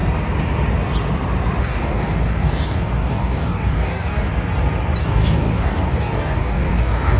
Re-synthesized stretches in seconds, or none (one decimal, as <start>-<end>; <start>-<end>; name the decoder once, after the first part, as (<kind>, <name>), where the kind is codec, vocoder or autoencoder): 1.6-4.3 (codec, DAC); 5.0-7.2